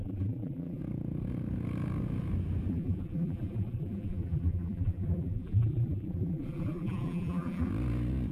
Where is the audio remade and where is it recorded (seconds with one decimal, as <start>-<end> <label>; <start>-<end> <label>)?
0.0-0.8 remade; 0.8-2.7 recorded; 2.7-7.7 remade; 7.7-8.3 recorded